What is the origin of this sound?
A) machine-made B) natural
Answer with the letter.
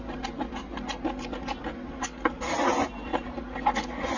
B